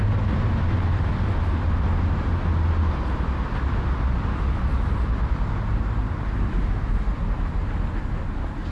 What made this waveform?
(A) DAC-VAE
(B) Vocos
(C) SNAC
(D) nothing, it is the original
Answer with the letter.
D